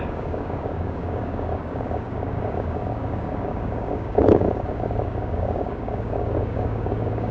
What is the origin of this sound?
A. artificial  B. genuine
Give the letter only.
A